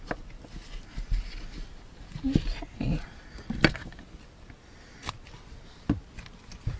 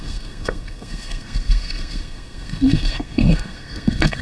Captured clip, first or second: first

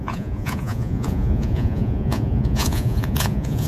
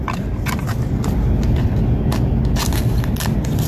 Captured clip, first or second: second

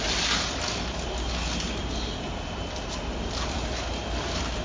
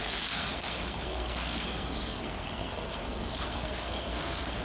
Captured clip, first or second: first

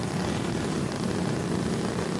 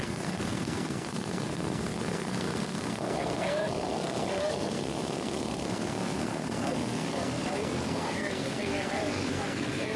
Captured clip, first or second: first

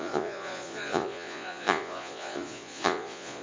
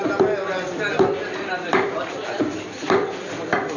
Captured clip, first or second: second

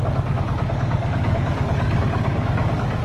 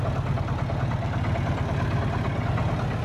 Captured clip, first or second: second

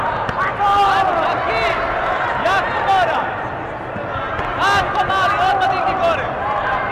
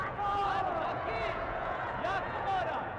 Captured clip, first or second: first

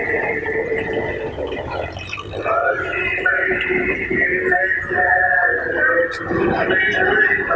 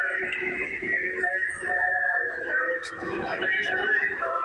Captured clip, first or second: first